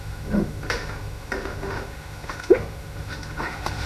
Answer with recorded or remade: remade